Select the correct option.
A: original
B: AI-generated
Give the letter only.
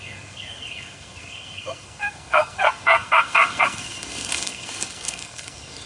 B